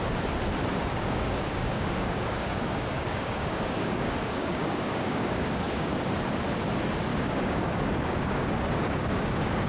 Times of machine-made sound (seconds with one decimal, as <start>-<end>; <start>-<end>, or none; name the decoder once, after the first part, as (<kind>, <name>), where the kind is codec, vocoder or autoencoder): 0.9-6.1 (codec, DAC); 7.1-9.7